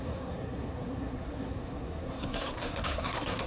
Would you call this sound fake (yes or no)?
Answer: yes